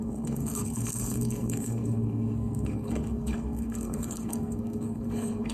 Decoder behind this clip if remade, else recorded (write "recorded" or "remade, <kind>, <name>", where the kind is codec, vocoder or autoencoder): remade, codec, SNAC